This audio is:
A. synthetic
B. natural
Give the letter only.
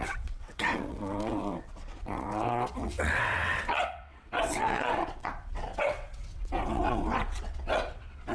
A